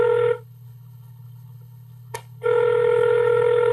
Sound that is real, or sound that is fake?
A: fake